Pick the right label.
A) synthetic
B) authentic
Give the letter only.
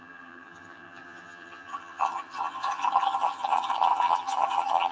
A